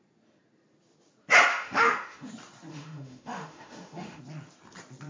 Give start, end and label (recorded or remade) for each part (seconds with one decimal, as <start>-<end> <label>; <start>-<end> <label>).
0.0-1.5 recorded; 1.5-2.3 remade; 2.3-2.7 recorded; 2.7-4.2 remade; 4.2-5.1 recorded